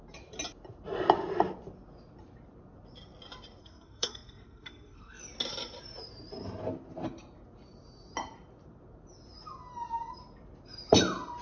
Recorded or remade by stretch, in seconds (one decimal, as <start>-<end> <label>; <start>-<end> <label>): 0.0-3.6 recorded; 3.6-5.2 remade; 5.2-11.4 recorded